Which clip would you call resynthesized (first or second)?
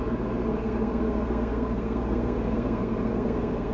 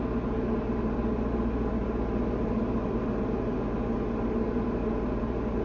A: first